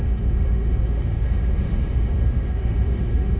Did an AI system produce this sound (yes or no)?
yes